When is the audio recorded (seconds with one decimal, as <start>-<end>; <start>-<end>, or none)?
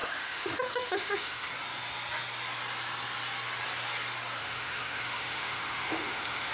1.5-4.4